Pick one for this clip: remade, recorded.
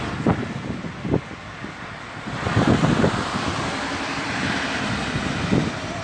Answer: remade